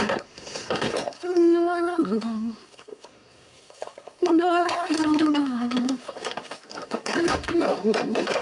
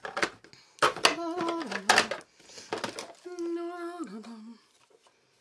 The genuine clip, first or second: second